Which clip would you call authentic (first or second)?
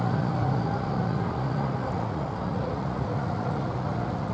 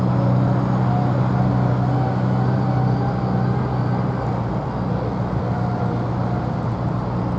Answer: second